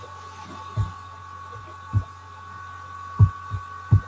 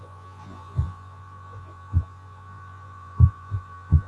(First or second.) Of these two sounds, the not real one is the second